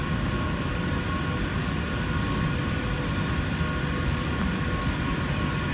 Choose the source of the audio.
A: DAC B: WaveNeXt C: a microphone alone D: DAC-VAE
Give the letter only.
C